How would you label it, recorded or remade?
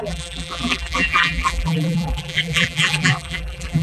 remade